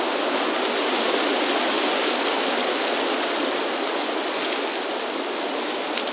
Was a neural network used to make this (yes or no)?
no